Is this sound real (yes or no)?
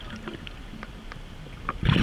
yes